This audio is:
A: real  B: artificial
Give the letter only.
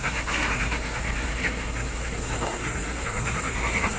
B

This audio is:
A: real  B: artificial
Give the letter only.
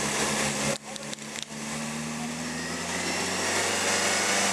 A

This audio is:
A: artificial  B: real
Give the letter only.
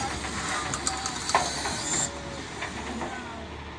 B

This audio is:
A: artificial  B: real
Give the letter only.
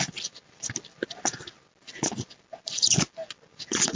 B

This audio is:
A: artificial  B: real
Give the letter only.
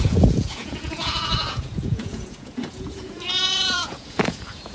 A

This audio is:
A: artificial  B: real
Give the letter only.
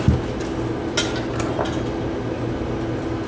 B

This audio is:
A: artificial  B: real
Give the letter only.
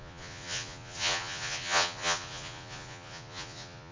A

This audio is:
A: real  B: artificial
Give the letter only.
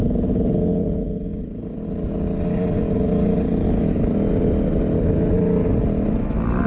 A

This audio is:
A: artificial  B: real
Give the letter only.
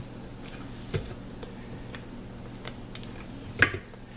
B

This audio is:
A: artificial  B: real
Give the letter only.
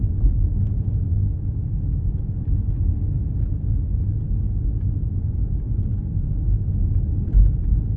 B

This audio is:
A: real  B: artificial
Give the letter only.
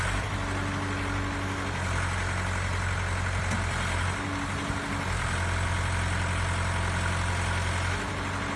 A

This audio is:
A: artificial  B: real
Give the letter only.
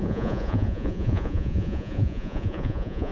A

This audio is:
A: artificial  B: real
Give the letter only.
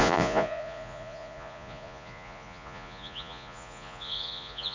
A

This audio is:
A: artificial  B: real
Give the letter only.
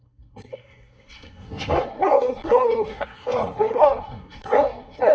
A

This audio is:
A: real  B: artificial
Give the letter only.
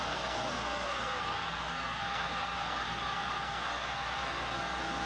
B